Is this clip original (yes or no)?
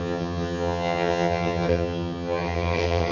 no